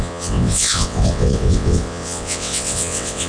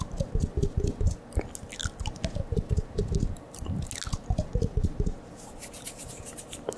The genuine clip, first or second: second